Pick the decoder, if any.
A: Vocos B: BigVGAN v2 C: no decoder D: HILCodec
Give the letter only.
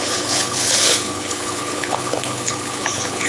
D